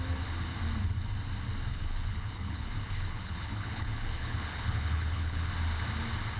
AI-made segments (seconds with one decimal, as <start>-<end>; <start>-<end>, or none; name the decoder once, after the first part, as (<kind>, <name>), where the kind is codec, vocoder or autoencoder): 1.7-5.5 (codec, HILCodec)